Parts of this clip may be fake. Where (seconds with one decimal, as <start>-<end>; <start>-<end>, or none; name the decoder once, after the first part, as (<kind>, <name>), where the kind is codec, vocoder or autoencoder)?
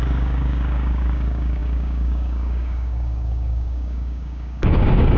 0.0-5.2 (codec, DAC)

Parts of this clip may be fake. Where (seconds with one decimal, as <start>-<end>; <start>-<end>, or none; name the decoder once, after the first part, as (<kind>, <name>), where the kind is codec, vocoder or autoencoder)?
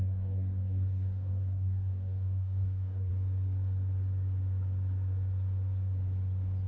0.0-3.1 (codec, DAC)